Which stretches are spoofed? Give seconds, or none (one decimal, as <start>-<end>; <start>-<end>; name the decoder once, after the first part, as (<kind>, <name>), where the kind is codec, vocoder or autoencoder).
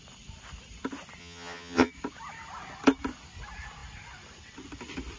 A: 1.2-1.9 (vocoder, HiFi-GAN)